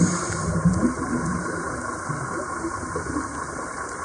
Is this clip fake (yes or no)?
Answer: no